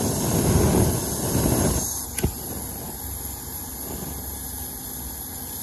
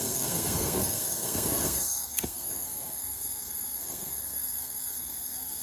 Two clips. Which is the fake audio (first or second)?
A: second